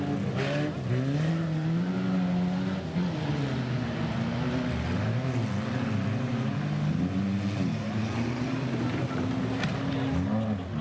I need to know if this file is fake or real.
real